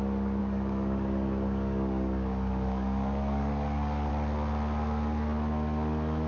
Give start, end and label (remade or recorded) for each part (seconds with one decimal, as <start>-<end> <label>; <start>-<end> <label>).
0.0-0.4 recorded; 0.4-4.1 remade; 4.1-6.3 recorded